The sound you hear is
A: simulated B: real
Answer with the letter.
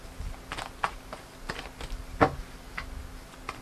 B